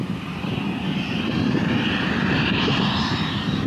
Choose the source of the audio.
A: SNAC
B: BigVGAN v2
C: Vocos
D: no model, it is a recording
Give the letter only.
B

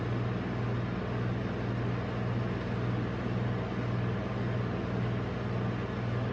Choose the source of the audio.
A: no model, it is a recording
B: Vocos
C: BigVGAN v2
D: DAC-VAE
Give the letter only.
A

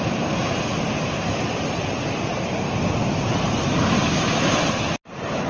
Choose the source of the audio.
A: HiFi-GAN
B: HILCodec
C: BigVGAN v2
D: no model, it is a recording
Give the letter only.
D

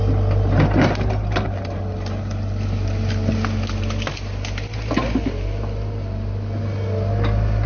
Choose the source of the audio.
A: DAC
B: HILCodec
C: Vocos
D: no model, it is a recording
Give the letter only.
D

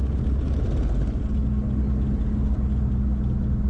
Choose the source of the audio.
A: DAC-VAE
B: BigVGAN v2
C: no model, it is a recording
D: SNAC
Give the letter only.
C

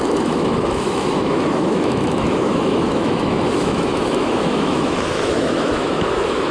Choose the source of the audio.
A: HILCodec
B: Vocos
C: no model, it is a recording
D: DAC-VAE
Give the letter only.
D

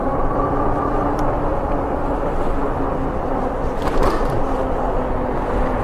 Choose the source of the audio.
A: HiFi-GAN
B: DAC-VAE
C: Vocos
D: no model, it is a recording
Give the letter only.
D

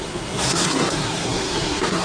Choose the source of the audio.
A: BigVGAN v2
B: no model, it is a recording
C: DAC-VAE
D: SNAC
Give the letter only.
D